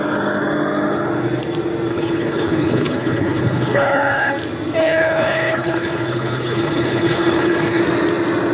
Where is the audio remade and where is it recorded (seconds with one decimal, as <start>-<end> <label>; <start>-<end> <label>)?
0.0-1.9 recorded; 1.9-4.3 remade; 4.3-4.8 recorded; 4.8-7.8 remade; 7.8-8.5 recorded